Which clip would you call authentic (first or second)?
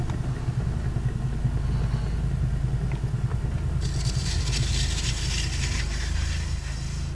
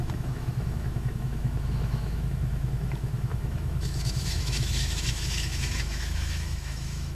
first